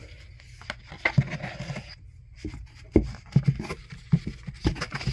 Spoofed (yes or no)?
no